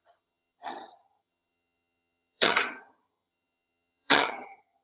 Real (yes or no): no